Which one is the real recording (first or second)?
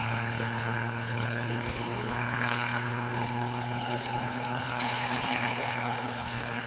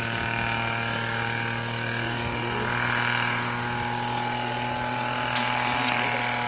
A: second